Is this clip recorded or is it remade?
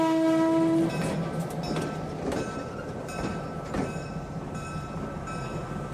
recorded